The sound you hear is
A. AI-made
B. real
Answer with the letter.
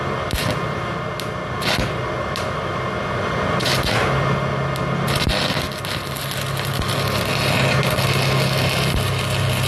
B